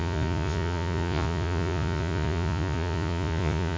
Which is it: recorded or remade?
remade